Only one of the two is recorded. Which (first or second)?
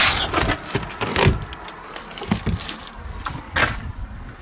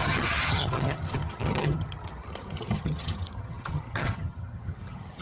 first